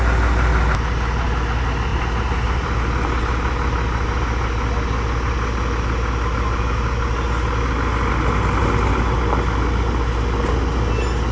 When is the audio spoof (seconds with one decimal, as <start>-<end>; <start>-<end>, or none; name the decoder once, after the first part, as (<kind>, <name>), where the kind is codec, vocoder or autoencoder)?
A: 1.9-2.8 (vocoder, BigVGAN v2)